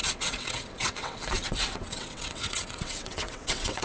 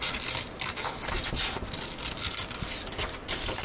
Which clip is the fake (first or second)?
first